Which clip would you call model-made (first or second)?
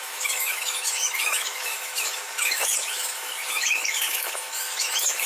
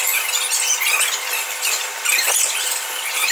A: first